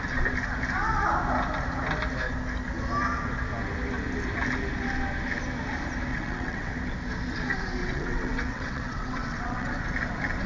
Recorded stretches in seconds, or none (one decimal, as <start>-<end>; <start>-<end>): 0.0-6.1; 6.7-7.8; 9.7-10.5